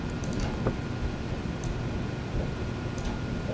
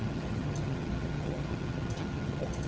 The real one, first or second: first